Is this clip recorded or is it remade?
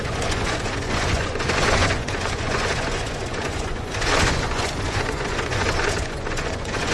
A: remade